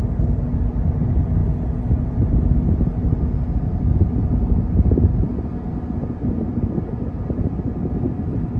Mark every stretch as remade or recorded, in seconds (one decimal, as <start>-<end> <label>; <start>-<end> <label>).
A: 0.0-8.6 recorded